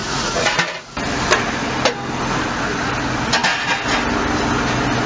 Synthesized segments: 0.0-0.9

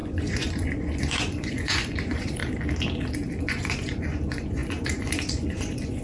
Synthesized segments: 0.0-2.4; 3.4-6.0

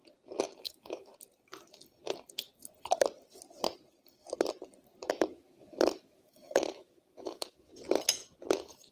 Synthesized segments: 0.6-1.1; 5.1-7.7

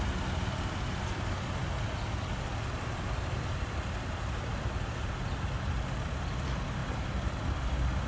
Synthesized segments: none

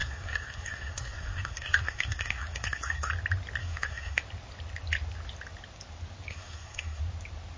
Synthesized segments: 0.0-3.1; 3.6-4.2; 6.3-7.0